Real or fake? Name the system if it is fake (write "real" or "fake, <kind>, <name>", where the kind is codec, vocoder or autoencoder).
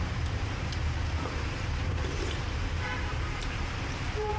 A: fake, vocoder, BigVGAN v2